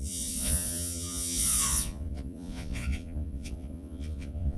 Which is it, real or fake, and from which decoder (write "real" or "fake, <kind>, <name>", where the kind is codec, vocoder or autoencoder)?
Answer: fake, vocoder, Vocos